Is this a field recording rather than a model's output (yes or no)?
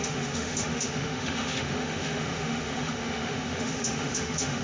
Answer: no